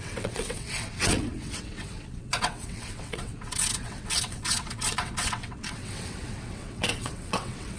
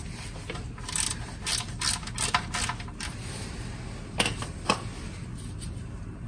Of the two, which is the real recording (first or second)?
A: second